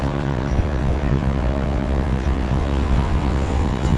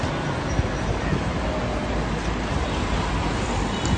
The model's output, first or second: first